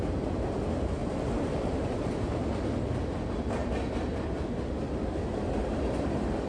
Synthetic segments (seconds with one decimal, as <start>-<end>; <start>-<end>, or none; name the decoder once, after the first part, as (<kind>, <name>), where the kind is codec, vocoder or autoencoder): 1.0-2.1 (vocoder, BigVGAN v2); 3.6-4.6